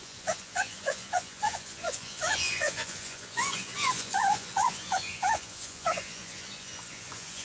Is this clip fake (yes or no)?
yes